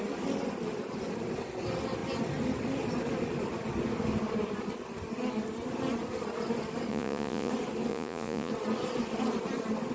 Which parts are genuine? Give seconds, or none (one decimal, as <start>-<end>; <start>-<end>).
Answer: 0.0-6.9; 7.5-7.9; 8.5-9.9